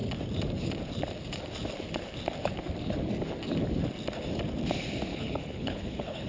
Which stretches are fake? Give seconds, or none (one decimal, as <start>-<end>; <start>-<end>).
5.1-6.3